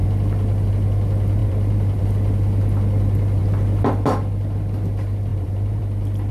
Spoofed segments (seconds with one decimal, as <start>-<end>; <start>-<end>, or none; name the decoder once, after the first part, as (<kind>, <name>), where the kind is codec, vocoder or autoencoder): 1.4-2.0 (vocoder, BigVGAN v2); 5.3-5.8